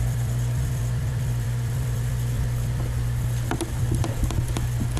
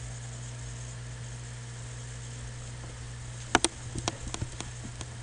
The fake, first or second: first